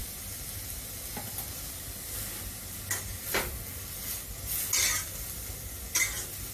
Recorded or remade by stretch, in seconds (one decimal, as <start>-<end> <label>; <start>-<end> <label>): 0.0-6.5 recorded